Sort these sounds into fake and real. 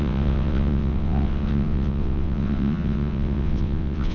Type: fake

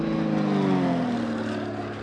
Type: real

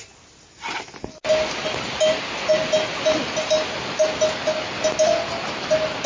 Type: real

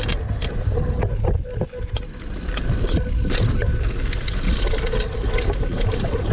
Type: real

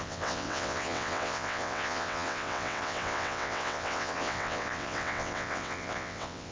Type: fake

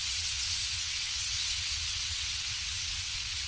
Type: fake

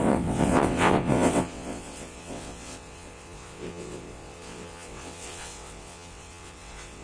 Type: fake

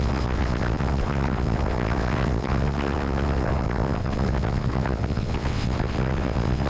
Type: fake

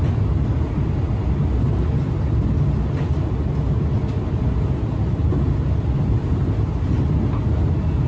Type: real